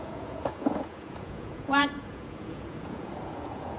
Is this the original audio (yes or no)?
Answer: no